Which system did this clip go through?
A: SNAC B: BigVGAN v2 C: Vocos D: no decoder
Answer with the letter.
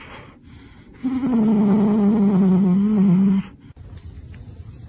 D